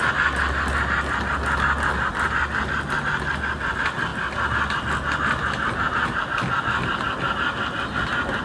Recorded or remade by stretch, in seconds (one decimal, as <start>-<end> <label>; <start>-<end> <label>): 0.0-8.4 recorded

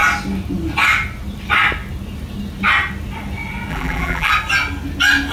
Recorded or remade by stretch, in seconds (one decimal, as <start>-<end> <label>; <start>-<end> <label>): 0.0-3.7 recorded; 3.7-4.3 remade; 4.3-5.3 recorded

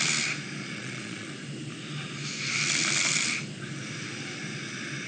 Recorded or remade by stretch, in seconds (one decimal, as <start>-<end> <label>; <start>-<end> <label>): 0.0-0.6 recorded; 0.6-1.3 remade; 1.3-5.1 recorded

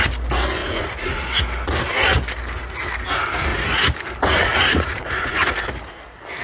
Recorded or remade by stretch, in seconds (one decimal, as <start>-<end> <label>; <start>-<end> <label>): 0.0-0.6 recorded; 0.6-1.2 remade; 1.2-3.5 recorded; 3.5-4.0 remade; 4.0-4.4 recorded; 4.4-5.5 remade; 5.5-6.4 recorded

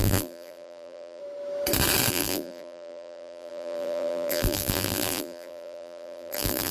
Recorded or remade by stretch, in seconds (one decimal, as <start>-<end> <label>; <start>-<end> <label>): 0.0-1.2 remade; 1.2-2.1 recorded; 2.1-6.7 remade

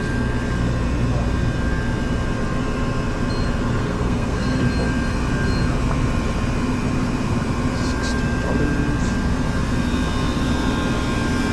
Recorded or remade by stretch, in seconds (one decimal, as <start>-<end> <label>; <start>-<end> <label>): 0.0-3.8 recorded; 3.8-4.6 remade; 4.6-11.5 recorded